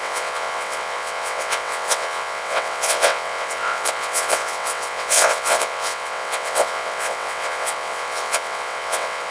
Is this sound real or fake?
fake